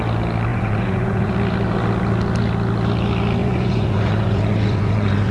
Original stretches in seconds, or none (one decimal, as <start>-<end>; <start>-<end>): 0.0-0.5; 1.3-3.4